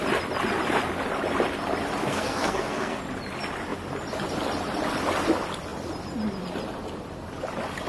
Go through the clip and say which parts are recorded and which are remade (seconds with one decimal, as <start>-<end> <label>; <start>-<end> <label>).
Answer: 0.0-2.0 recorded; 2.0-3.0 remade; 3.0-7.9 recorded